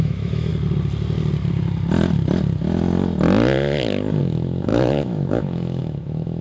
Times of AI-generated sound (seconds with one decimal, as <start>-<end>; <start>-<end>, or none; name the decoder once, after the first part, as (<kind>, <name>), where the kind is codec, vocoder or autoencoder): 0.0-0.5 (autoencoder, DAC-VAE); 4.2-6.4